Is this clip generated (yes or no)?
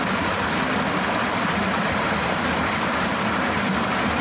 no